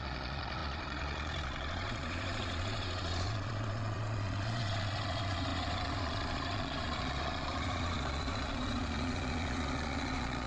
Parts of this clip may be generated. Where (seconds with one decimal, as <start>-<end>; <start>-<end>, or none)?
0.0-10.5